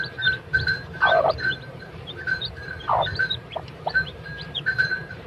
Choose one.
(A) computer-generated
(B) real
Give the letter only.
A